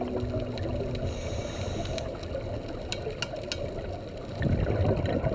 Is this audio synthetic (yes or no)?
no